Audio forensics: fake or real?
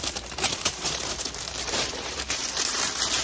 fake